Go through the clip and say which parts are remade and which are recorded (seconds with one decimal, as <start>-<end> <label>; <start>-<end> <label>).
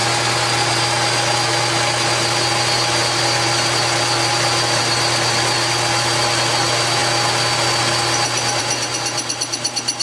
0.0-10.0 recorded